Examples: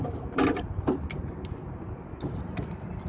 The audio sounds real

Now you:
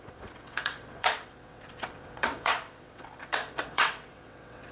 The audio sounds fake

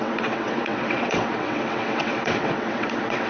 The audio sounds fake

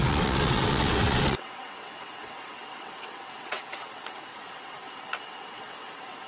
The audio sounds fake